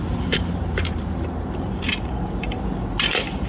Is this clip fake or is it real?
fake